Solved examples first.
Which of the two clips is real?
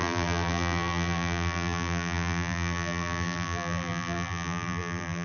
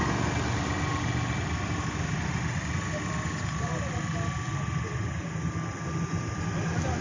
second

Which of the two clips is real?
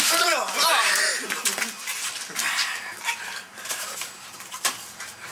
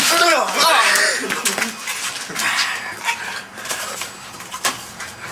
second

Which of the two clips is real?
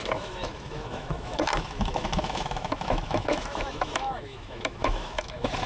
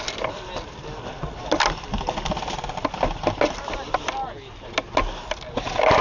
second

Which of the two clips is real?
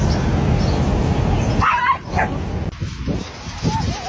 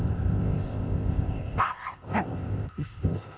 first